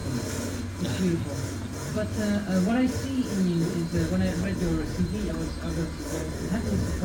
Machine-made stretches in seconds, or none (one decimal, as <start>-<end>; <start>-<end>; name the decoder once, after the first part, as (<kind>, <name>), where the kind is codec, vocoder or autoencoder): none